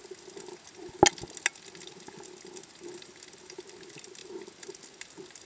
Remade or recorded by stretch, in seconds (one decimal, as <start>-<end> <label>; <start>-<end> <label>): 0.0-5.4 recorded